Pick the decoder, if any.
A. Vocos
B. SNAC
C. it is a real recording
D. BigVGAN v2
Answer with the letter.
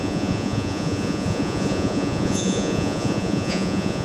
A